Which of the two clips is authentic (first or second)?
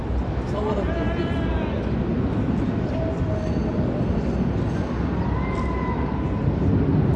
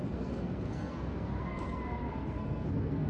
first